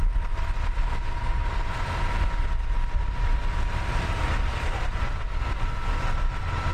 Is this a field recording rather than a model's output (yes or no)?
yes